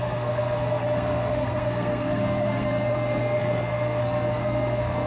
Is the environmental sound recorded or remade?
remade